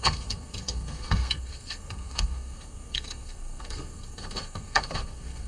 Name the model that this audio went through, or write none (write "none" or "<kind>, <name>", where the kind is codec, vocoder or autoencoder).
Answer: codec, SNAC